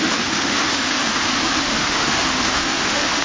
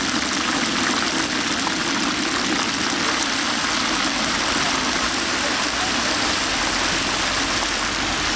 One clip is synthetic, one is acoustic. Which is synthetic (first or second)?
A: first